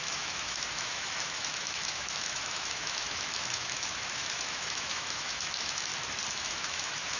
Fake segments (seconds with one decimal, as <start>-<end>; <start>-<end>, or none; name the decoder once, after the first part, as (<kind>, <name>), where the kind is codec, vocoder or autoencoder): 0.0-5.9 (autoencoder, DAC-VAE); 6.4-7.2